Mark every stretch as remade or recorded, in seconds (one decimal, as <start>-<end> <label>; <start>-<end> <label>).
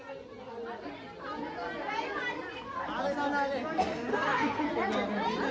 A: 0.0-4.1 recorded; 4.1-4.7 remade; 4.7-5.5 recorded